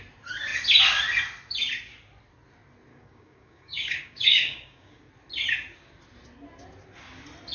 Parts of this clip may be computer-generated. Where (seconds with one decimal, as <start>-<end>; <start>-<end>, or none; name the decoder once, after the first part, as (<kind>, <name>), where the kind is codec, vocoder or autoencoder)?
2.9-5.1 (codec, DAC)

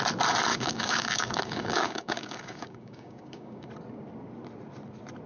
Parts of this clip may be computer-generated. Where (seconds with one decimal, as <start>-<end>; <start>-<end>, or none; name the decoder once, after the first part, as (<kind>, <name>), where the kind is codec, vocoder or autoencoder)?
0.5-3.7 (codec, DAC)

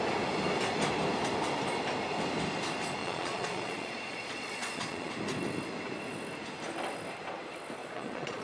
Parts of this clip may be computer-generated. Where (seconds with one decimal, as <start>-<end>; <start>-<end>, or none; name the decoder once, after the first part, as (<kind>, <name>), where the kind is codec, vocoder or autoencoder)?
3.0-5.1 (vocoder, Vocos); 7.8-8.4

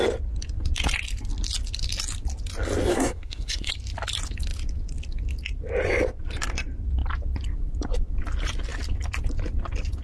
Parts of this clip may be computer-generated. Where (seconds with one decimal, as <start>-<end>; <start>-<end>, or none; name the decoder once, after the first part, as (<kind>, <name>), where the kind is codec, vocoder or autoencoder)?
2.9-3.7 (codec, SNAC)

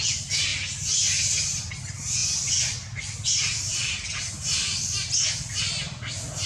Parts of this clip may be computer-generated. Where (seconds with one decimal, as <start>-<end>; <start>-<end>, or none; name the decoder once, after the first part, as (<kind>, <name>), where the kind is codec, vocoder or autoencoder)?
none

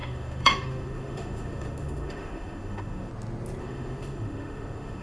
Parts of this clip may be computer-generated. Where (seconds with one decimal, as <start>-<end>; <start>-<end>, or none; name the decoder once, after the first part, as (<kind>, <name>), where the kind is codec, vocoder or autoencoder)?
0.0-3.1 (autoencoder, DAC-VAE); 3.6-5.0

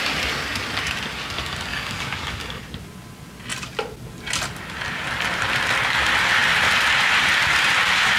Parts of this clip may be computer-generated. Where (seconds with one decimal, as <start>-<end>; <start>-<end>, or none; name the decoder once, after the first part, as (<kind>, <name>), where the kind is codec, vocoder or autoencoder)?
1.7-2.6 (codec, DAC)

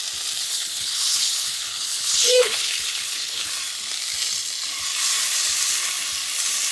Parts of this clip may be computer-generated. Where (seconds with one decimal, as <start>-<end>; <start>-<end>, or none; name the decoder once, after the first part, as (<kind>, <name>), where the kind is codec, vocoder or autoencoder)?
0.4-3.5 (codec, HILCodec)